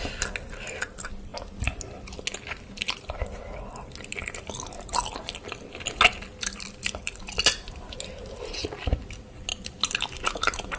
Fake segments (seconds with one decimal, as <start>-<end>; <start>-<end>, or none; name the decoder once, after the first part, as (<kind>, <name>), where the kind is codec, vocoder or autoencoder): none